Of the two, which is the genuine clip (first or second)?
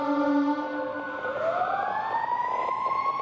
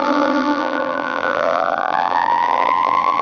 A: first